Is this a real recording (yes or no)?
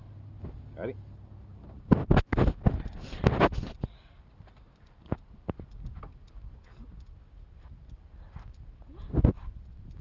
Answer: yes